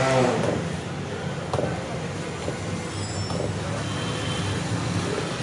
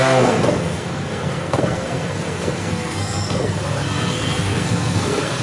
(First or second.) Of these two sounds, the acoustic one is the first